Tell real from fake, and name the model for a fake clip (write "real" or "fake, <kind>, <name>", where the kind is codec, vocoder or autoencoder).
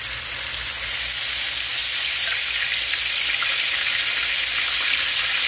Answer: real